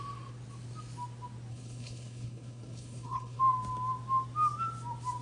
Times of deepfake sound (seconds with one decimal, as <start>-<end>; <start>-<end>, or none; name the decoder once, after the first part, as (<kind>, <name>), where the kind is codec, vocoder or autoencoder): 1.5-3.4 (codec, HILCodec)